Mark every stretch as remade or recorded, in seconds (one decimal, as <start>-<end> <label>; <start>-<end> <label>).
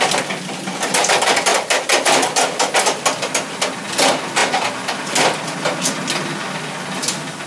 0.0-7.5 recorded